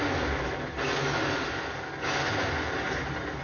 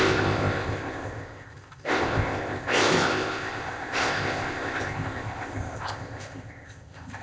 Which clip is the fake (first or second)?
second